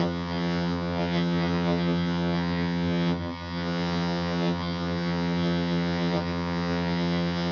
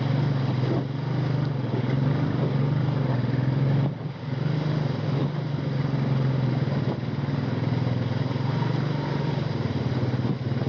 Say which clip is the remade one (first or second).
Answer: first